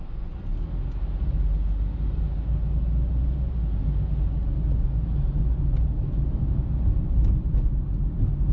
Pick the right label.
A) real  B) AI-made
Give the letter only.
A